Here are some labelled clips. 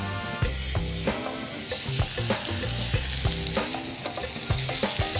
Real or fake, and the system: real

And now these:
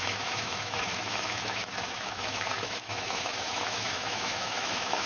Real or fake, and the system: fake, autoencoder, DAC-VAE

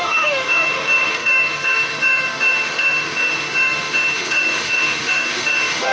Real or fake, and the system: fake, autoencoder, DAC-VAE